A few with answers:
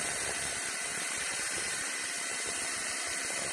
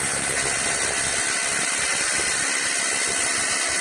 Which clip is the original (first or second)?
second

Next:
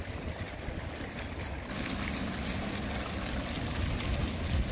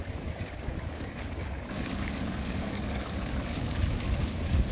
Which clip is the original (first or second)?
first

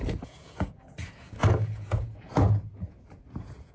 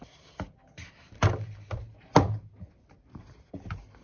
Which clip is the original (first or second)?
second